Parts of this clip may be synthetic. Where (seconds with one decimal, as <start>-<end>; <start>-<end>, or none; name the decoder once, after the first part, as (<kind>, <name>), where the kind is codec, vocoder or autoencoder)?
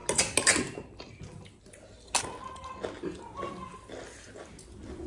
none